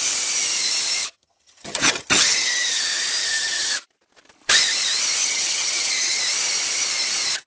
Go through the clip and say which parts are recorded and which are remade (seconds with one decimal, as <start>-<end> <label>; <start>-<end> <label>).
0.0-1.0 recorded; 1.0-2.8 remade; 2.8-3.2 recorded; 3.2-3.7 remade; 3.7-5.2 recorded; 5.2-6.2 remade; 6.2-7.5 recorded